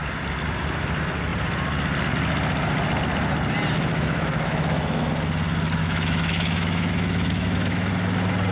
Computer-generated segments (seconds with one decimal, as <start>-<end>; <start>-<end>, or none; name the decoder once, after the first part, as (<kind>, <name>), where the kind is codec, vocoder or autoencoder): 3.9-5.1 (autoencoder, DAC-VAE); 5.8-7.9